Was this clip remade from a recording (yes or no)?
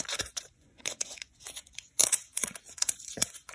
yes